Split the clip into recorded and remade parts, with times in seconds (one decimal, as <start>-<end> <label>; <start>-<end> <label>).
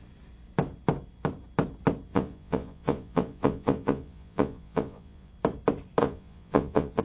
0.0-2.1 recorded; 2.1-5.3 remade; 5.3-6.0 recorded; 6.0-7.0 remade